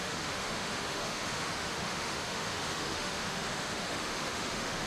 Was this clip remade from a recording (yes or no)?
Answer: yes